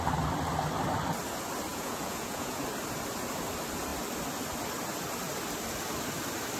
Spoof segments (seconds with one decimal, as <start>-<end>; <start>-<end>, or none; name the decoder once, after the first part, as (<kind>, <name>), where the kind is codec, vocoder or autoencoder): 1.7-2.6 (vocoder, Vocos)